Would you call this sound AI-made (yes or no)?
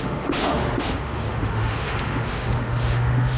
yes